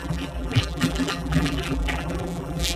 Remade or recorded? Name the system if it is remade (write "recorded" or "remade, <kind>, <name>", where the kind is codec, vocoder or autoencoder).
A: remade, vocoder, BigVGAN v2